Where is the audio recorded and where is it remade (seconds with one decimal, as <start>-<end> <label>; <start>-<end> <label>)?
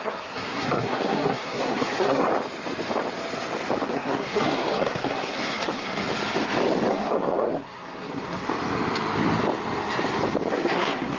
0.0-2.3 remade; 2.3-3.8 recorded; 3.8-6.0 remade; 6.0-6.9 recorded; 6.9-8.5 remade; 8.5-10.5 recorded; 10.5-11.2 remade